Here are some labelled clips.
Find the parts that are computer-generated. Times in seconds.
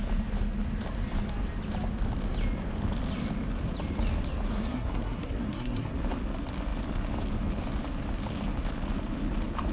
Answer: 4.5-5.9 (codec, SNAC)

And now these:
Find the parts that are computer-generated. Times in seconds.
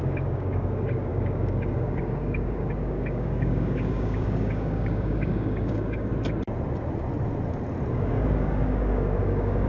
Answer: 0.0-6.1 (codec, DAC); 7.9-9.7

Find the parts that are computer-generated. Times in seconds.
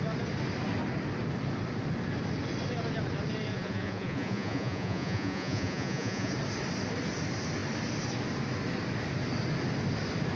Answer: 3.5-6.3 (vocoder, Vocos)